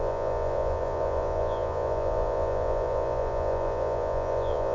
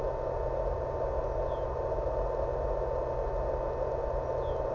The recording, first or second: second